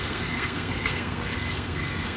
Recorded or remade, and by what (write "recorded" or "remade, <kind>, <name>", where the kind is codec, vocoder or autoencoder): remade, codec, SNAC